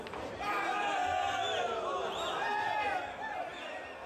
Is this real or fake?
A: real